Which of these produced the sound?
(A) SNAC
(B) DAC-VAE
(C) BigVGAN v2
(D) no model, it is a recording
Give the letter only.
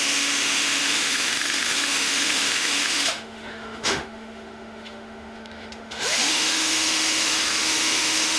B